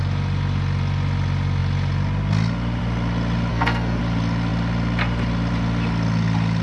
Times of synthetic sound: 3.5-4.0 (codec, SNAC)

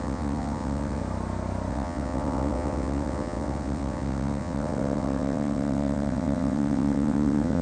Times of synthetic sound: 0.0-1.0 (vocoder, WaveNeXt); 1.7-7.6

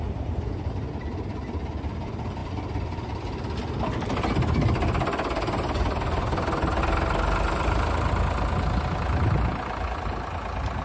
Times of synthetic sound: none

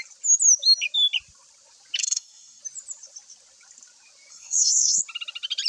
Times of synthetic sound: 2.0-2.6 (codec, SNAC); 4.3-5.0

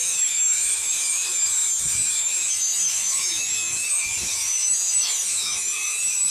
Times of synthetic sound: 0.0-6.3 (autoencoder, DAC-VAE)

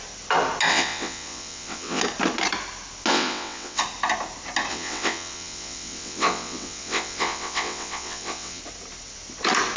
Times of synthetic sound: 0.7-2.0 (vocoder, WaveNeXt); 3.1-3.8; 4.7-8.6